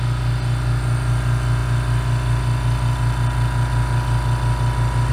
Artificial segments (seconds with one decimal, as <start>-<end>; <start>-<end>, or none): none